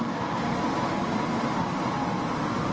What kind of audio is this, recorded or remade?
recorded